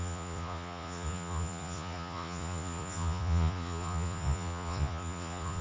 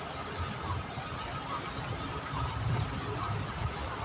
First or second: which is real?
second